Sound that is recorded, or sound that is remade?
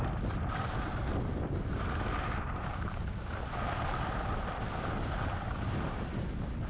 recorded